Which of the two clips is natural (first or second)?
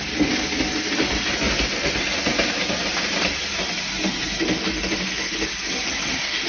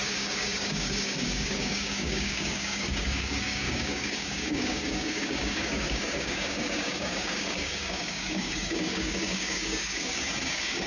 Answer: first